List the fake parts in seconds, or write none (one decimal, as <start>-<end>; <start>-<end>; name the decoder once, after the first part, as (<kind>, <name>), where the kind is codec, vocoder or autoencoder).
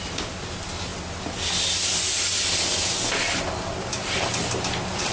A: 3.9-5.1 (vocoder, BigVGAN v2)